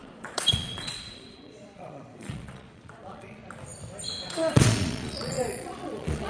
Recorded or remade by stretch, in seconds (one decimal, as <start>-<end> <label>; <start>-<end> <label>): 0.0-3.4 remade; 3.4-4.2 recorded; 4.2-6.3 remade